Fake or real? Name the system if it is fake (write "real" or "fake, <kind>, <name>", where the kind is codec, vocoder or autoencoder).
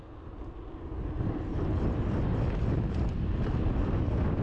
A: real